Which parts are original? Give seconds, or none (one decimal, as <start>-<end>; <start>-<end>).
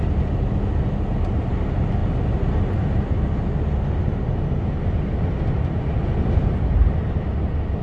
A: 0.0-7.8